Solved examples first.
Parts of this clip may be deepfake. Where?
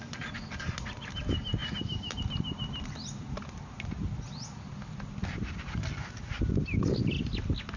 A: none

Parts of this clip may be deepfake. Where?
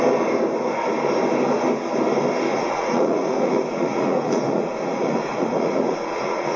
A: 2.5-6.6 (vocoder, Vocos)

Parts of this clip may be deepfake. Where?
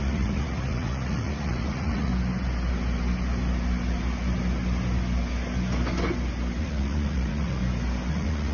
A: 0.0-2.1 (vocoder, Vocos); 6.6-7.6; 8.1-8.5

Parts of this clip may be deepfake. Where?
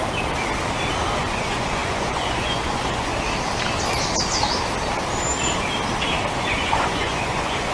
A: 1.2-3.1 (vocoder, Vocos); 6.4-7.7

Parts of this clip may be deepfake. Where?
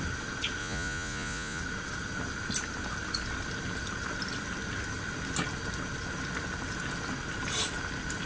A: 0.6-1.6 (vocoder, Vocos)